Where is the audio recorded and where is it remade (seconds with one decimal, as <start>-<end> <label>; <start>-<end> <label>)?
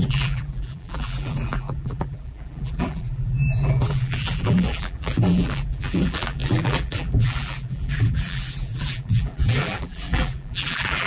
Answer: 0.0-11.1 remade